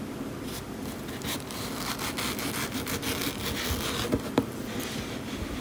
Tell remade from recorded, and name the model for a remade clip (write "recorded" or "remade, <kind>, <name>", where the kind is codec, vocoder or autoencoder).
recorded